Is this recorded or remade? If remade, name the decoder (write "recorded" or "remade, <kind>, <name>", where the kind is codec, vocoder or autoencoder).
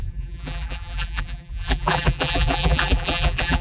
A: remade, vocoder, BigVGAN v2